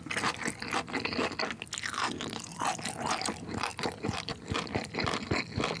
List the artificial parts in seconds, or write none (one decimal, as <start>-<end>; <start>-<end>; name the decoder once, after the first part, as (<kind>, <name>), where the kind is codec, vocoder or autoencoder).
none